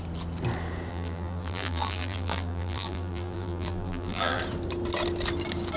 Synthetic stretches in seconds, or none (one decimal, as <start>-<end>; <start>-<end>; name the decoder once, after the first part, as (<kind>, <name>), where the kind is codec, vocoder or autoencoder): 0.9-4.4 (vocoder, BigVGAN v2)